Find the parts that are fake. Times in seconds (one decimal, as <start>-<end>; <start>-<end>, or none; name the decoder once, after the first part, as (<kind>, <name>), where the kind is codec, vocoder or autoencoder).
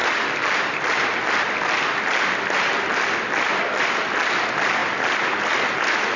none